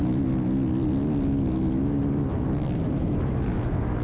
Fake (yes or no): no